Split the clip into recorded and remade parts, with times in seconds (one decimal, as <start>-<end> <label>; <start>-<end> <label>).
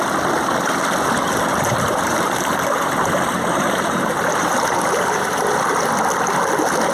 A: 0.0-1.5 recorded; 1.5-5.6 remade; 5.6-6.9 recorded